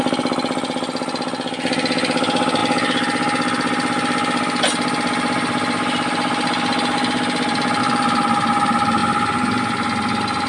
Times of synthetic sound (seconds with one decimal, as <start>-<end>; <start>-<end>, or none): none